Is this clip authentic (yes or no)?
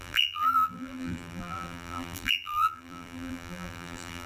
no